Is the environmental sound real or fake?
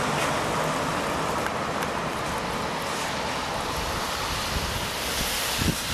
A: real